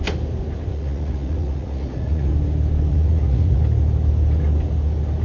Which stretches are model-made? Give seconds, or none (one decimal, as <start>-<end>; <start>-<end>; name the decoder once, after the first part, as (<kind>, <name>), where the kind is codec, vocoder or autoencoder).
0.7-2.3 (vocoder, Vocos); 2.9-3.6